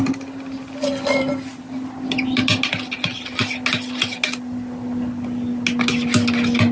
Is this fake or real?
real